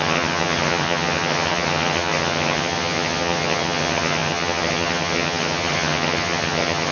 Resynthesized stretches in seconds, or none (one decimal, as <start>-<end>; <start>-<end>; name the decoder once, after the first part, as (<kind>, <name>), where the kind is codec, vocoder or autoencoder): 0.0-6.9 (vocoder, HiFi-GAN)